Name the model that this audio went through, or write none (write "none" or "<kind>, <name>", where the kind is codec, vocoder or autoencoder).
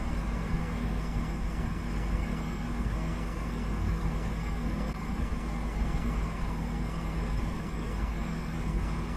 codec, SNAC